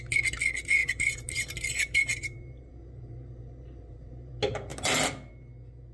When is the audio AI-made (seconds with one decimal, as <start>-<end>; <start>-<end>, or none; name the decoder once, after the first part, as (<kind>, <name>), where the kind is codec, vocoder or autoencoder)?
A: 0.8-4.3 (vocoder, BigVGAN v2)